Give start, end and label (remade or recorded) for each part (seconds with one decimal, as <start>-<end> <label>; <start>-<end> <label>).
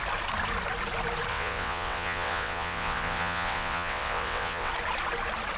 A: 0.0-1.3 recorded; 1.3-4.7 remade; 4.7-5.6 recorded